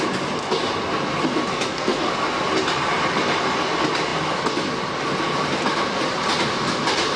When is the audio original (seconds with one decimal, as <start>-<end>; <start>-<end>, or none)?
0.0-1.5; 2.1-7.2